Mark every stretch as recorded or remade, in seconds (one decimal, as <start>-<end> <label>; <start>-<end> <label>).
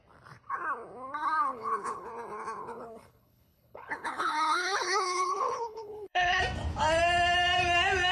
0.0-1.5 recorded; 1.5-2.1 remade; 2.1-2.6 recorded; 2.6-6.4 remade; 6.4-8.1 recorded